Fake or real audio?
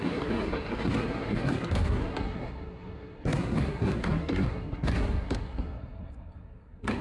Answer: fake